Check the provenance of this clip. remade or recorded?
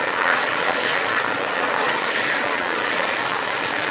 remade